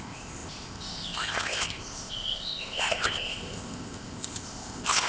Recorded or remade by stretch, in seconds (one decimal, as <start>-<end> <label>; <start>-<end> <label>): 0.0-5.1 remade